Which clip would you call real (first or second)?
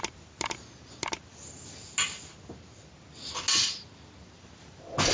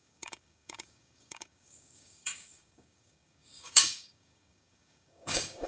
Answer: first